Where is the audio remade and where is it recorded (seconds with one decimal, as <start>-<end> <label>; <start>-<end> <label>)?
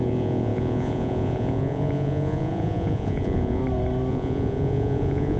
0.0-3.6 remade; 3.6-4.1 recorded; 4.1-5.4 remade